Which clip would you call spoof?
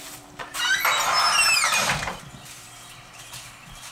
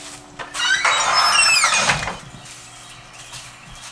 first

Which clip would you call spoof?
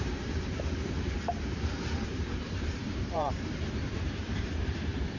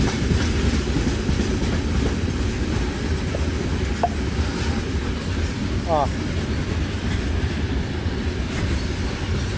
first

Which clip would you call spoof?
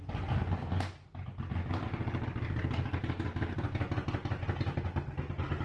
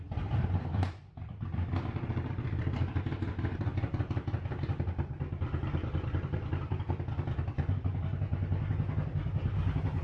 second